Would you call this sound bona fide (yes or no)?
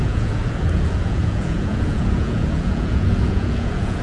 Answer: no